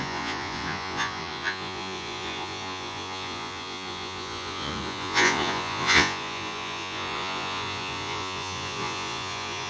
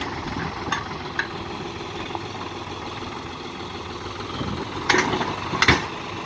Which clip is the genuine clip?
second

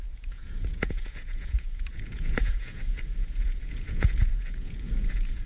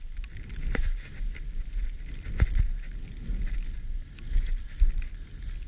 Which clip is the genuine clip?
second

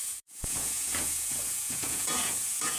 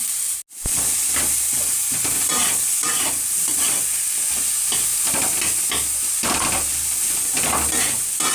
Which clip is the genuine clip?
second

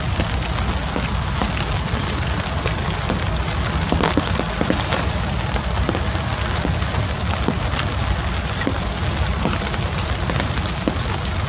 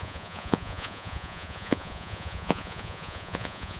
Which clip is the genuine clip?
first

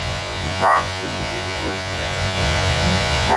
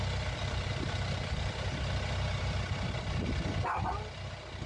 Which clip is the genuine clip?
second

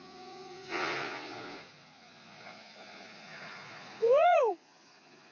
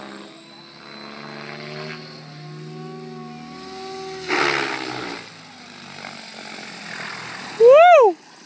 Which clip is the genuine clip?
second